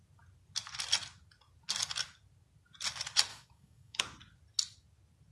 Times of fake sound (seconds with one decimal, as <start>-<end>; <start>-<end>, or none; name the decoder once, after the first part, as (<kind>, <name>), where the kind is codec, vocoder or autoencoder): 3.3-4.0 (codec, DAC)

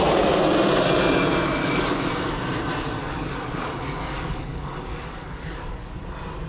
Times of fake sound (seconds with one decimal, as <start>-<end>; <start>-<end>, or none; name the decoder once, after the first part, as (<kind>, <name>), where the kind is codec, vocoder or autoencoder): 1.6-2.1 (codec, DAC); 3.0-5.9

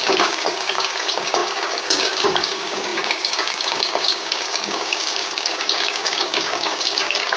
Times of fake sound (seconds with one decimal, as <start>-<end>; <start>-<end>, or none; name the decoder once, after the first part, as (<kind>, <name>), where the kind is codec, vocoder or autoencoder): 0.0-7.4 (codec, DAC)

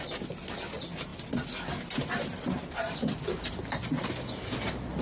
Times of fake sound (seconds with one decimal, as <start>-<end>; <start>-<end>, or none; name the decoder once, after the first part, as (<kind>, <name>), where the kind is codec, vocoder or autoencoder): none

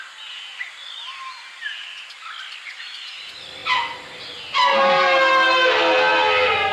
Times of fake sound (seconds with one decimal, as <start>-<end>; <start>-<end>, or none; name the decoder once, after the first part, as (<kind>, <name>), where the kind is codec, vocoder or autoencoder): none

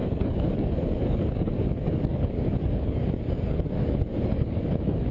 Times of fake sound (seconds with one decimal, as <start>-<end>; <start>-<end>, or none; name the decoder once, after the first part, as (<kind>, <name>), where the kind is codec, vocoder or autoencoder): 0.0-5.1 (codec, DAC)

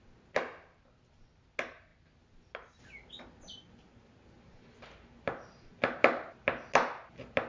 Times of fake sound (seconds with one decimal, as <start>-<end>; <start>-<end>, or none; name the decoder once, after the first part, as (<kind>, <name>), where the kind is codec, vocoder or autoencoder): none